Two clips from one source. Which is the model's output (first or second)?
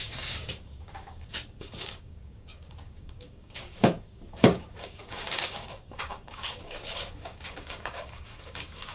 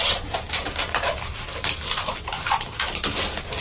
first